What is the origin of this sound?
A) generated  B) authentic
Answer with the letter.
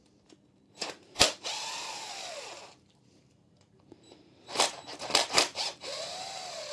A